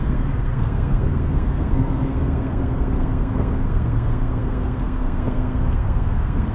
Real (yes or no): no